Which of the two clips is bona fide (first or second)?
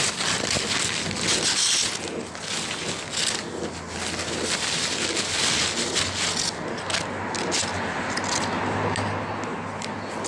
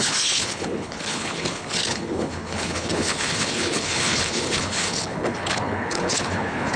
first